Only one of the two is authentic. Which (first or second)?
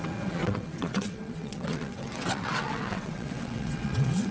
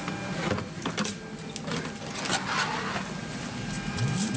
second